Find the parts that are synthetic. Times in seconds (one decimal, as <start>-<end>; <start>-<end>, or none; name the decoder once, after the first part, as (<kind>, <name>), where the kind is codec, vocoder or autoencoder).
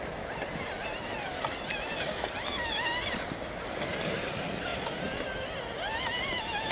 none